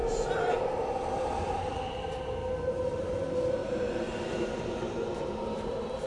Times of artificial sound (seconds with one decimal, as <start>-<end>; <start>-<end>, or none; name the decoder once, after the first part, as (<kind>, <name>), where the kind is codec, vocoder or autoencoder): 0.0-1.7 (vocoder, BigVGAN v2); 3.6-6.1